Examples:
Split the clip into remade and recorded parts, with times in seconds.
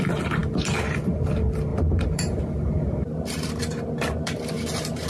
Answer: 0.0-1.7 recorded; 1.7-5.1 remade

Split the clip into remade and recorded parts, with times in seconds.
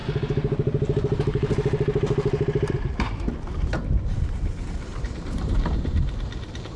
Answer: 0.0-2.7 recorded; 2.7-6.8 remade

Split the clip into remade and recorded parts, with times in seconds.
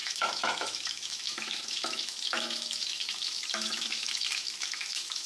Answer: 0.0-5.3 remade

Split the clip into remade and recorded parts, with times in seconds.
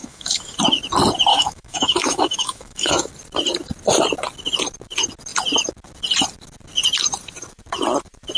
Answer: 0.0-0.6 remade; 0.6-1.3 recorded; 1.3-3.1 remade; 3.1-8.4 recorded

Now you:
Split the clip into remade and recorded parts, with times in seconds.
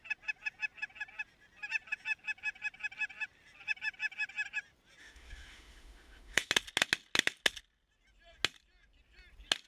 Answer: 0.0-5.0 recorded; 5.0-6.5 remade; 6.5-9.7 recorded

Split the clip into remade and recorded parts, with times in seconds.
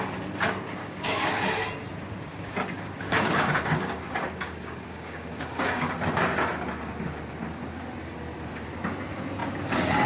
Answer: 0.0-0.8 recorded; 0.8-1.4 remade; 1.4-2.3 recorded; 2.3-5.9 remade; 5.9-10.1 recorded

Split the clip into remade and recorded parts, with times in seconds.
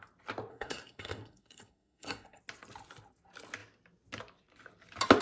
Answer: 0.0-0.5 recorded; 0.5-2.4 remade; 2.4-5.2 recorded